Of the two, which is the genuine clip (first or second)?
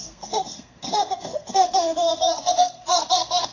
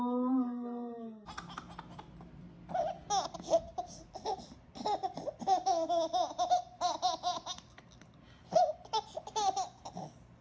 second